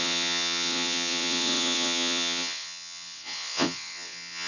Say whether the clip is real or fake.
fake